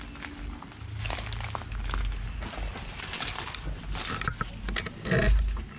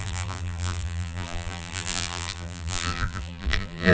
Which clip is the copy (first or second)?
second